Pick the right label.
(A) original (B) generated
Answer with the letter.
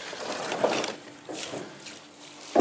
A